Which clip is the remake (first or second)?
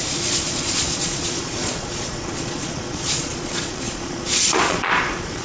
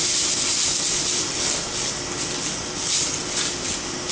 first